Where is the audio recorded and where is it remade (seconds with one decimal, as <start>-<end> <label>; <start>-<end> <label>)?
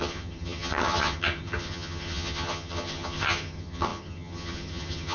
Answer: 0.0-5.1 remade